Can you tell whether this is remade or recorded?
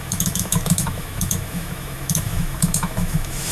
remade